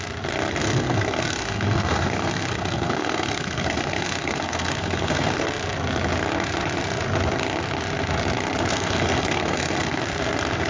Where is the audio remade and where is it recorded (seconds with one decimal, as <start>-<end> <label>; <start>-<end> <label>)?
0.0-0.6 recorded; 0.6-5.4 remade; 5.4-8.7 recorded; 8.7-10.0 remade; 10.0-10.7 recorded